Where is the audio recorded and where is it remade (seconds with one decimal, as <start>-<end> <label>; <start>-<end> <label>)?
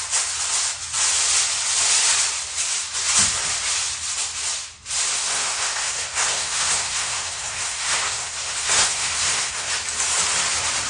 0.0-5.1 recorded; 5.1-9.7 remade; 9.7-10.9 recorded